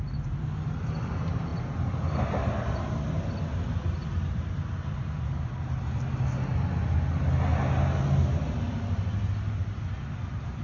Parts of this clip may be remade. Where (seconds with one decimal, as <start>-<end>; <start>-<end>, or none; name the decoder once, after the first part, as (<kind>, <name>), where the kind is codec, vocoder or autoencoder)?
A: none